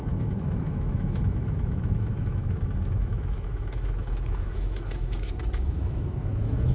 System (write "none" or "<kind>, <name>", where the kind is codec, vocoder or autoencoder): autoencoder, DAC-VAE